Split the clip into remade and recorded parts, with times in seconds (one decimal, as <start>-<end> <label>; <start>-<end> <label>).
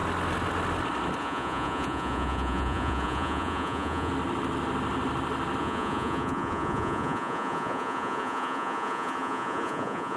0.0-1.2 recorded; 1.2-4.1 remade; 4.1-5.6 recorded; 5.6-10.2 remade